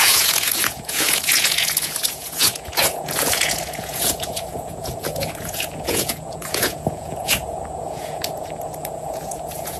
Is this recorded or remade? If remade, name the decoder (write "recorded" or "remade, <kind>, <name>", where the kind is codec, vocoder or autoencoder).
remade, vocoder, Vocos